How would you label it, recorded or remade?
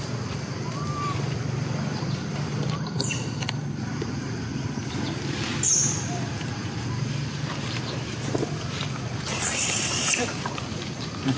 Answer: remade